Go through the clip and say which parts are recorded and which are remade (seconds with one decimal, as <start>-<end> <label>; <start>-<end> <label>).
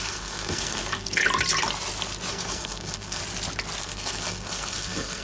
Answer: 0.0-1.2 remade; 1.2-2.3 recorded; 2.3-3.2 remade; 3.2-3.8 recorded; 3.8-5.2 remade